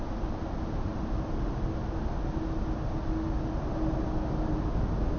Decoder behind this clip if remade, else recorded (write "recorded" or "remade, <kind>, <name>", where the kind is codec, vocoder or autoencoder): recorded